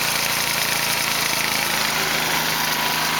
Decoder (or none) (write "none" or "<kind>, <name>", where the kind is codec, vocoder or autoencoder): none